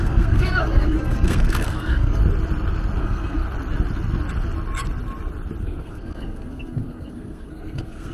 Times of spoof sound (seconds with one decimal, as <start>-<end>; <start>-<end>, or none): 0.0-2.2; 3.0-3.4; 5.6-8.1